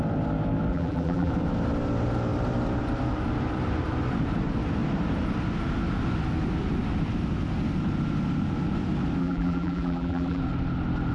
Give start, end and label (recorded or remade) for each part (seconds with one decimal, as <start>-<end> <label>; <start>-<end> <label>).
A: 0.0-0.7 recorded; 0.7-1.3 remade; 1.3-9.2 recorded; 9.2-10.4 remade; 10.4-11.1 recorded